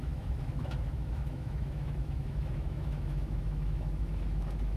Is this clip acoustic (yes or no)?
no